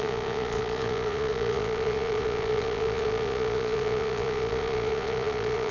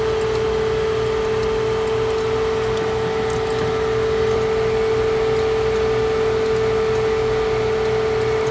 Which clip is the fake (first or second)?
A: first